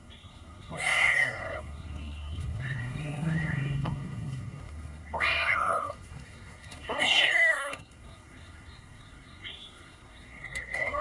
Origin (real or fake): fake